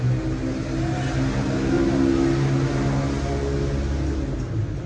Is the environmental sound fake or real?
real